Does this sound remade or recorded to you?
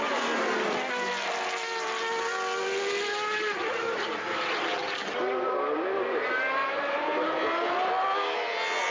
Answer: recorded